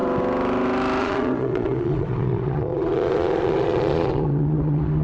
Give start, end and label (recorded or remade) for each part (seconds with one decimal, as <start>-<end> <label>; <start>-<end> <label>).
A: 0.0-1.0 recorded; 1.0-5.0 remade